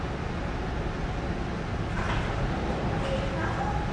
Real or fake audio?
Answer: real